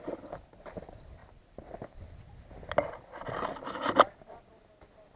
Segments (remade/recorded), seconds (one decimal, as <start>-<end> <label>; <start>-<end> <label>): 0.0-5.2 recorded